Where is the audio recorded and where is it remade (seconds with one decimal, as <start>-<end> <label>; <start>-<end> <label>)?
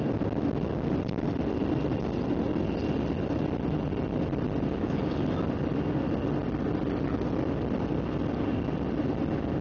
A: 0.0-9.6 recorded